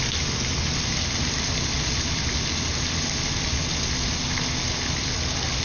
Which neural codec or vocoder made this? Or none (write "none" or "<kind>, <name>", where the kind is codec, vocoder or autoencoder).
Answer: none